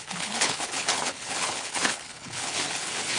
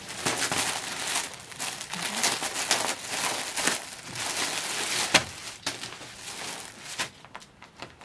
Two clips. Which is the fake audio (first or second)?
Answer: first